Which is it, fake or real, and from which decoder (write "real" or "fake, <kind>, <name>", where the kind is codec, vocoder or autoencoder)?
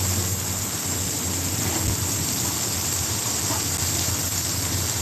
real